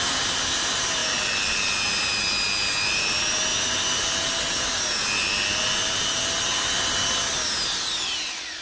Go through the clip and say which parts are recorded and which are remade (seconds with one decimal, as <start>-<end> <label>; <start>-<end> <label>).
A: 0.0-8.6 recorded

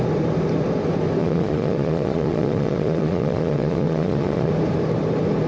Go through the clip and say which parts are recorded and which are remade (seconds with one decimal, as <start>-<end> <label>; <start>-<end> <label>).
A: 0.0-1.2 recorded; 1.2-4.5 remade; 4.5-5.5 recorded